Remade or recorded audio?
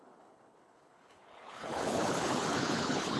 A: remade